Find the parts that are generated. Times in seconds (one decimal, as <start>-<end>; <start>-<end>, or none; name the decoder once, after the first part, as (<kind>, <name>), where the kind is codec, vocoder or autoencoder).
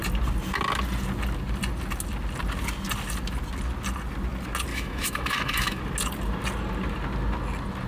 4.7-5.8 (autoencoder, DAC-VAE)